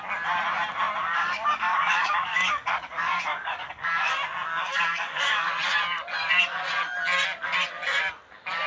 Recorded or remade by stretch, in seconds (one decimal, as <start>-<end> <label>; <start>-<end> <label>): 0.0-1.0 recorded; 1.0-4.1 remade; 4.1-4.5 recorded; 4.5-5.5 remade; 5.5-8.7 recorded